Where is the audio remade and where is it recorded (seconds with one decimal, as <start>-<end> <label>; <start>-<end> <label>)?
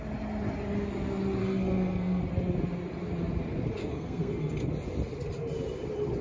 0.0-1.4 recorded; 1.4-2.2 remade; 2.2-3.8 recorded; 3.8-4.7 remade; 4.7-6.2 recorded